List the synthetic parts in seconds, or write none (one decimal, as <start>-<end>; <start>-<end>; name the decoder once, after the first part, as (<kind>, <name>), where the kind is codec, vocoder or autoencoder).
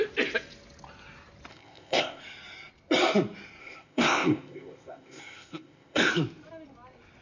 1.5-2.2 (codec, ZipCodec); 3.6-6.1